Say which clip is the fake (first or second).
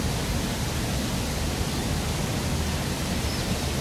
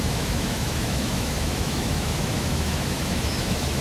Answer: second